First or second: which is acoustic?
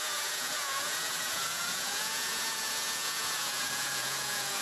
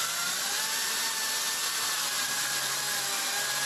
second